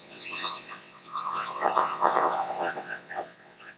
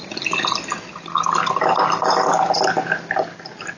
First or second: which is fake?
first